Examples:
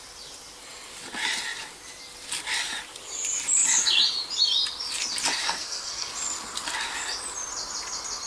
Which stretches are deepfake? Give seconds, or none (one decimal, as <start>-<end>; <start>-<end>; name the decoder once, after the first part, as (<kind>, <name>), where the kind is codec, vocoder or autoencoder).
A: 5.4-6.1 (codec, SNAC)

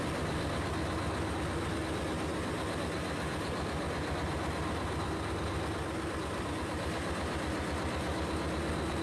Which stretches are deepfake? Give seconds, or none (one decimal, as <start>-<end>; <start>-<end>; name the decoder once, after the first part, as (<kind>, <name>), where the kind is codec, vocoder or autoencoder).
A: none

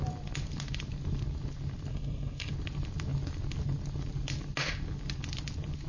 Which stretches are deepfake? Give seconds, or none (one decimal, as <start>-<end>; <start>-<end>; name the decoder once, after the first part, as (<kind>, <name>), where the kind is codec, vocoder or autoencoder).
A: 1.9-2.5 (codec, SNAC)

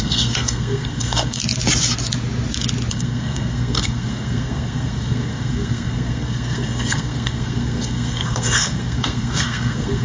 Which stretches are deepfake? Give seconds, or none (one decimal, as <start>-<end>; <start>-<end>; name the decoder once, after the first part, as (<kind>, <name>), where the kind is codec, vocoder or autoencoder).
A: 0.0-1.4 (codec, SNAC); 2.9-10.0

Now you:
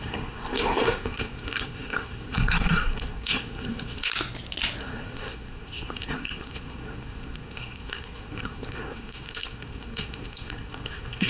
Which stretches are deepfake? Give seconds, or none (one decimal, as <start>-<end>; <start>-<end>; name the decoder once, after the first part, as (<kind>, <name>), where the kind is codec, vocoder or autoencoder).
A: 0.0-4.1 (codec, SNAC); 4.8-11.3

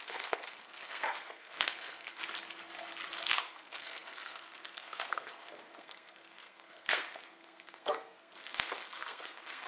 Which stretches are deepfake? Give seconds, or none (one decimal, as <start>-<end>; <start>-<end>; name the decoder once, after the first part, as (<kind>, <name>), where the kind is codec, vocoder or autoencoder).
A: 0.0-2.2 (codec, SNAC); 3.3-9.7

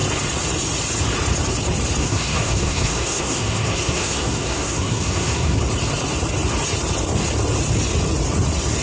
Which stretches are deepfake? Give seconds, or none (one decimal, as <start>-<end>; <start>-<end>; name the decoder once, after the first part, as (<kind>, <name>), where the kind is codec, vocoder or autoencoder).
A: 2.0-5.6 (codec, SNAC)

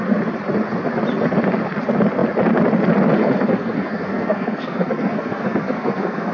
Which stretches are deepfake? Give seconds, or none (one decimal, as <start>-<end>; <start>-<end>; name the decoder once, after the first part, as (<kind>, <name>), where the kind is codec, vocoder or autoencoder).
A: 3.2-6.3 (codec, SNAC)